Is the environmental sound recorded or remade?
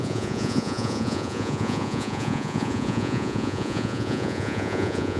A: remade